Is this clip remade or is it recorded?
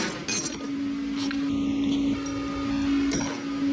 recorded